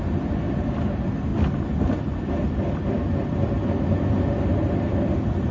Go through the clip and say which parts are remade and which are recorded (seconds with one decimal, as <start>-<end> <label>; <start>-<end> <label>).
0.0-1.3 remade; 1.3-3.2 recorded; 3.2-5.5 remade

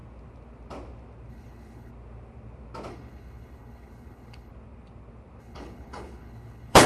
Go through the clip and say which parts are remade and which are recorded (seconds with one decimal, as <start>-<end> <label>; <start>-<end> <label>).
0.0-1.3 recorded; 1.3-1.9 remade; 1.9-2.9 recorded; 2.9-4.5 remade; 4.5-5.4 recorded; 5.4-6.9 remade

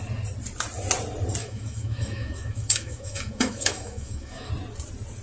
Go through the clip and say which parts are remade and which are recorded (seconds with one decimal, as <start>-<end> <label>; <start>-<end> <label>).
0.0-1.4 recorded; 1.4-4.5 remade; 4.5-5.2 recorded

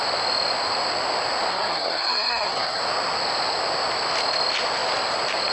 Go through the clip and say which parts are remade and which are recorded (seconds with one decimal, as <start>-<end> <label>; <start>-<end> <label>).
0.0-1.5 recorded; 1.5-2.8 remade; 2.8-5.5 recorded